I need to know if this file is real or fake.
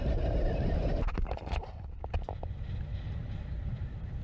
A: fake